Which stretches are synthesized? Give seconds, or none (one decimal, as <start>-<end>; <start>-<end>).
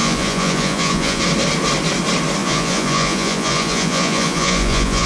0.0-1.2; 2.4-5.1